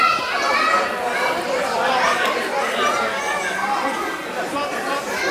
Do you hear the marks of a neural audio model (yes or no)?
no